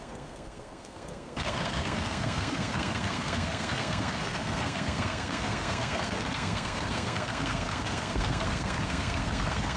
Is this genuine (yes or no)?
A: no